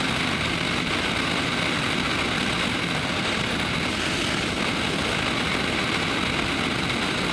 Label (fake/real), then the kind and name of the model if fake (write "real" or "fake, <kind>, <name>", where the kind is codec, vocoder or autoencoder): real